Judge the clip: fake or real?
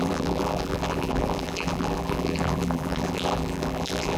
fake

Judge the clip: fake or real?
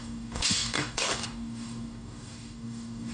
fake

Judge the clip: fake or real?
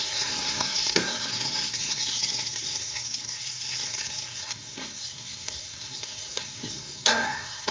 fake